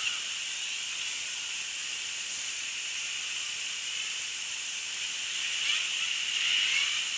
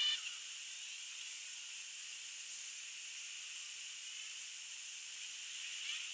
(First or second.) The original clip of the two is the second